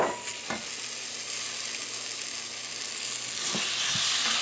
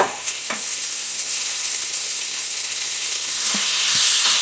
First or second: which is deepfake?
second